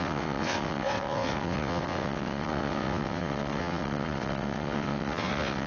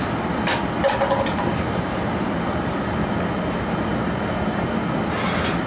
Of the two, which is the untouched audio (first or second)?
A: second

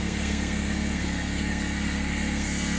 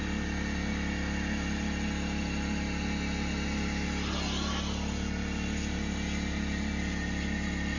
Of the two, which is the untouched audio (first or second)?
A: second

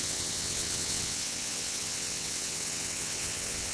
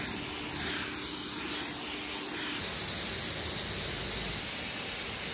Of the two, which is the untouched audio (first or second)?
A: second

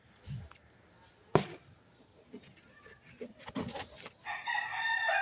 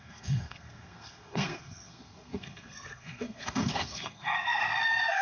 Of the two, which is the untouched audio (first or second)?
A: first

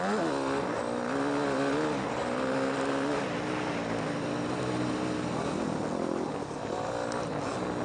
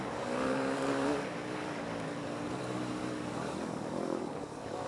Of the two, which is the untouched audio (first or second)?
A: first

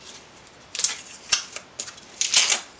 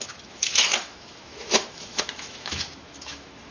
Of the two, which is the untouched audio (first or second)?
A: first